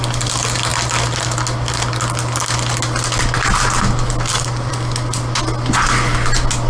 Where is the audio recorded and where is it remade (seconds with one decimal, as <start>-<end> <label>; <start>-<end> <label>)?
0.0-6.7 recorded